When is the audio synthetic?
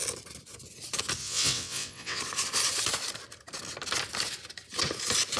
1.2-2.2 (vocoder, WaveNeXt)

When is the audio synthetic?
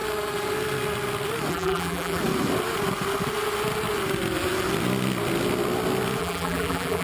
1.5-2.2 (vocoder, BigVGAN v2); 6.2-7.0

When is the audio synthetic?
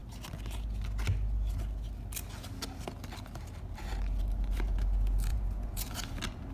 5.3-5.9 (vocoder, Vocos)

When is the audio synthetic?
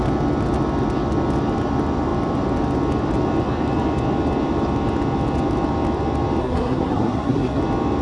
6.4-7.6 (codec, SNAC)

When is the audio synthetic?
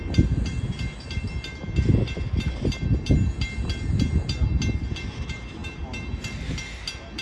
none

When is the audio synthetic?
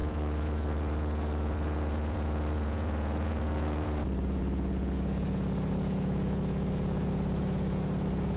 0.0-8.4 (vocoder, Vocos)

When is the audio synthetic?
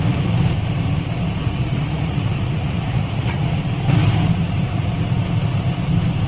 1.4-3.5 (vocoder, Vocos)